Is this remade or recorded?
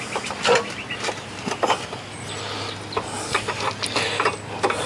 recorded